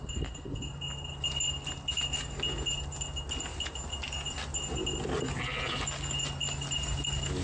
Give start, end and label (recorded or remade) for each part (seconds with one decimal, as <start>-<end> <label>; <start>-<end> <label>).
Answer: 0.0-7.4 recorded